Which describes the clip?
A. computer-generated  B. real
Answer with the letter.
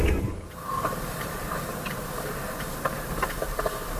A